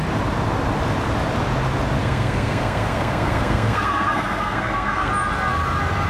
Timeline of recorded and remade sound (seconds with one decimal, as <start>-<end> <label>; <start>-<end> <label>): 0.0-2.0 recorded; 2.0-5.1 remade; 5.1-6.1 recorded